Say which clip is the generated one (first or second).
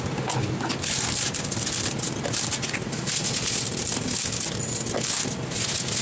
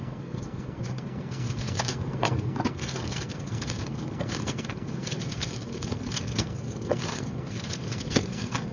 second